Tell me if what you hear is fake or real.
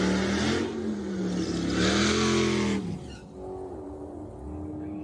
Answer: real